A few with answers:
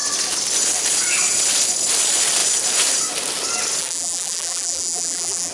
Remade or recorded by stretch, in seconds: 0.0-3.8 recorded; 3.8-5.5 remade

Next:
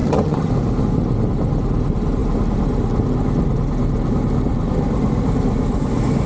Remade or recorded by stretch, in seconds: 0.0-0.5 remade; 0.5-6.3 recorded

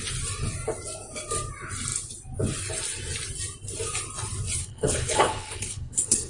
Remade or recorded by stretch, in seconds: 0.0-4.6 recorded; 4.6-6.3 remade

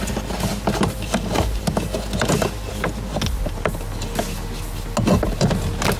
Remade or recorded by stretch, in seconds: 0.0-6.0 recorded

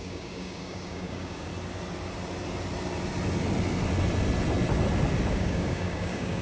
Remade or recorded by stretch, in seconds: 0.0-1.5 remade; 1.5-5.3 recorded; 5.3-6.4 remade

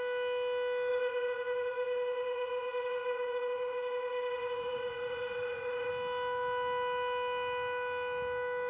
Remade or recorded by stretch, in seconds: 0.0-0.9 recorded; 0.9-5.9 remade; 5.9-8.7 recorded

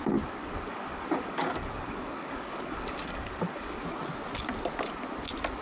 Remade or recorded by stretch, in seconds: 0.0-0.4 recorded; 0.4-3.8 remade; 3.8-5.6 recorded

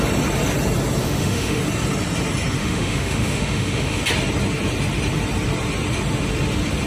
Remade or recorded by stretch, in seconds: 0.0-1.0 recorded; 1.0-1.6 remade; 1.6-2.6 recorded; 2.6-4.0 remade; 4.0-6.9 recorded